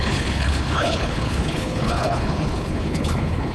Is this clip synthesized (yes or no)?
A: yes